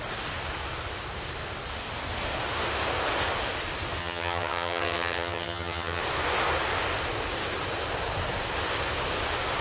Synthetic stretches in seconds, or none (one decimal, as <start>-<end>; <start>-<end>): 4.0-6.0